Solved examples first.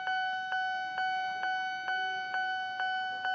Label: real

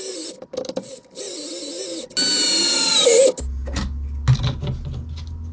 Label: real